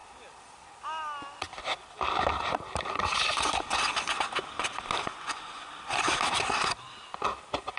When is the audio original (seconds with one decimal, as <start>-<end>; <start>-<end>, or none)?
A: 0.0-5.1; 5.7-7.8